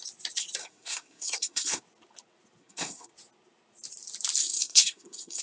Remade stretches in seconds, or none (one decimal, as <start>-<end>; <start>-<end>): 0.6-1.8; 2.6-3.1; 4.4-5.4